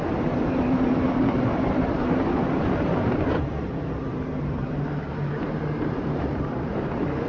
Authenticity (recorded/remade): remade